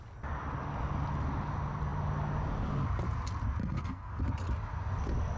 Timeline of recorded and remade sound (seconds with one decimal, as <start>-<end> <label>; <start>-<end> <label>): 0.0-3.6 recorded; 3.6-4.2 remade; 4.2-5.4 recorded